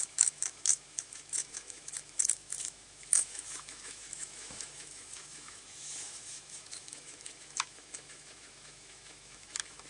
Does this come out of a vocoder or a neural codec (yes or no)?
yes